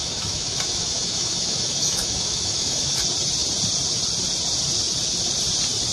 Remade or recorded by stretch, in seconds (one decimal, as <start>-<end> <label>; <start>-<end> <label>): 0.0-3.0 remade; 3.0-5.9 recorded